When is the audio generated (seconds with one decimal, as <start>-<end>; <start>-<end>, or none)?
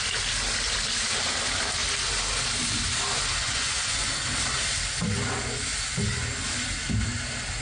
3.4-4.1